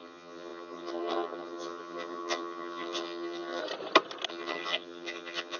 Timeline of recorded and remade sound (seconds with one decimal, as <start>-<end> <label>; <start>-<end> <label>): 0.0-3.6 remade; 3.6-4.3 recorded; 4.3-5.6 remade